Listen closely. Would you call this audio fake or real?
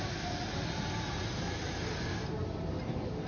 real